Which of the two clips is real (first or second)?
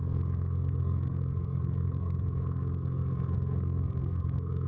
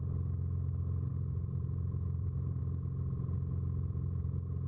second